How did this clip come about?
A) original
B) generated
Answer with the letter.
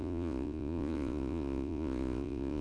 B